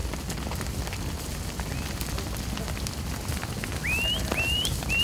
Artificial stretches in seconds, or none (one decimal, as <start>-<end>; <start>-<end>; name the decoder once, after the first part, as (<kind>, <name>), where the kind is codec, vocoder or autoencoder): none